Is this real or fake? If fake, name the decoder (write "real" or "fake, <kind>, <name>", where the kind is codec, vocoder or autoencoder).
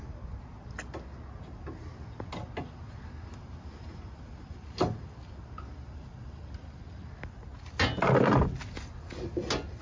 real